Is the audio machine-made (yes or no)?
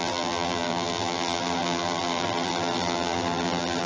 yes